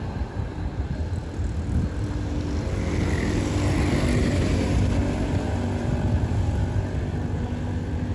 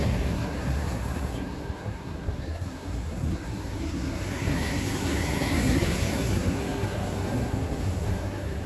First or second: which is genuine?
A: first